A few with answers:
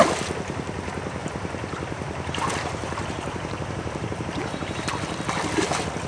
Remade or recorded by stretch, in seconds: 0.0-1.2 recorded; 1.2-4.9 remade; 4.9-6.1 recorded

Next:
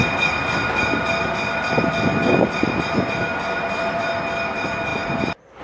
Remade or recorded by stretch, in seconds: 0.0-3.3 recorded; 3.3-4.1 remade; 4.1-5.6 recorded

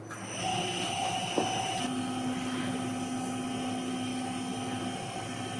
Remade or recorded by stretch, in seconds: 0.0-0.5 recorded; 0.5-1.8 remade; 1.8-5.6 recorded

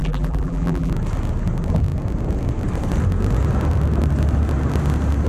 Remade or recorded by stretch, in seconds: 0.0-0.9 remade; 0.9-5.3 recorded